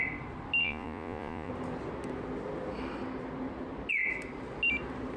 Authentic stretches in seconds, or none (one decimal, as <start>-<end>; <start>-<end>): 0.0-0.6; 1.5-5.2